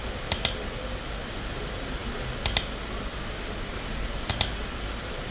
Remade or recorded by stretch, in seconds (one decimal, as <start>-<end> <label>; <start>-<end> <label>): 0.0-5.3 recorded